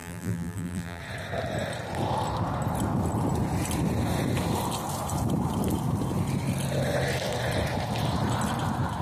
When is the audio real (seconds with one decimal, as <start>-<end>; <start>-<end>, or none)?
1.0-9.0